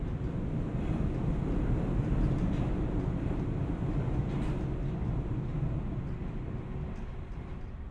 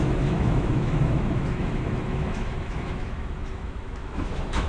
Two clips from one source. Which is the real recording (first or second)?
first